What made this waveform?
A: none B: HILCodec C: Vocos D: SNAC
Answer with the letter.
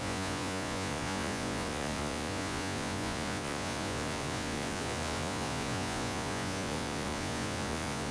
C